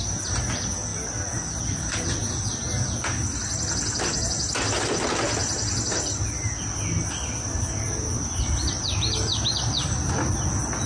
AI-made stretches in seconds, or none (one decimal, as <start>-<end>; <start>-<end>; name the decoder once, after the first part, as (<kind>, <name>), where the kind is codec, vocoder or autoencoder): none